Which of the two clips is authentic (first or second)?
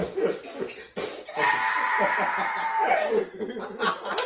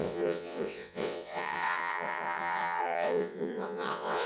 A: first